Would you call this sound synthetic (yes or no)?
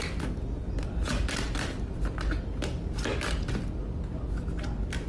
no